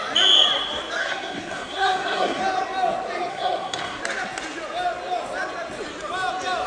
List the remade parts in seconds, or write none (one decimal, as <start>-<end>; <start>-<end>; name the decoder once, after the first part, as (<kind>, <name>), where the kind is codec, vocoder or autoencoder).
1.0-2.4 (codec, SNAC); 3.3-4.0